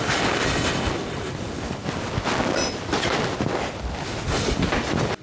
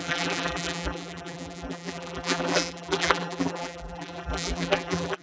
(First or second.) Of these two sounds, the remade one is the second